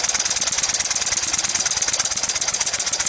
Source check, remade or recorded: recorded